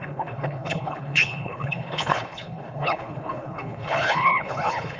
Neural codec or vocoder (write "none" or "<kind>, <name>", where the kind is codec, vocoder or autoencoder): codec, HILCodec